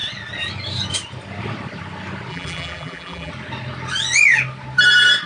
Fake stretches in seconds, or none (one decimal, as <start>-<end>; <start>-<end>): 2.3-3.3